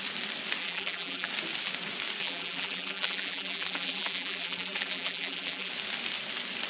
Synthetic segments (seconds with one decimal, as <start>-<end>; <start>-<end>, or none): 0.6-1.3; 2.2-5.7